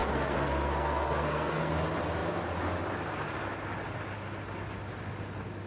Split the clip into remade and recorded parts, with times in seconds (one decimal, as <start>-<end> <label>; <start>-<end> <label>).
0.0-1.7 remade; 1.7-5.7 recorded